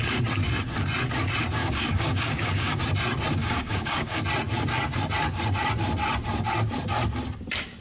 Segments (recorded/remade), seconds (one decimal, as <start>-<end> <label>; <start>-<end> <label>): 0.0-1.6 recorded; 1.6-2.8 remade; 2.8-3.4 recorded; 3.4-4.2 remade; 4.2-7.8 recorded